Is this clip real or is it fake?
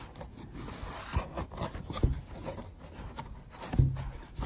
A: real